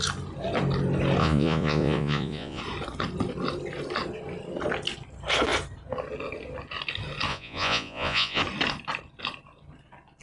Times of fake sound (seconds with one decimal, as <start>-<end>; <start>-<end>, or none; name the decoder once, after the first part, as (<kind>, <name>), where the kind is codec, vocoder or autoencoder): 1.2-2.6 (vocoder, Vocos); 7.3-8.4